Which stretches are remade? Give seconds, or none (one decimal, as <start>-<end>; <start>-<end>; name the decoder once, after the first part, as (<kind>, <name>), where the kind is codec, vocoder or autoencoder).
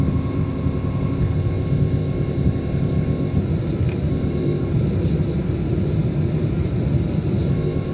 0.0-3.4 (codec, ZipCodec); 4.1-4.7; 7.5-7.9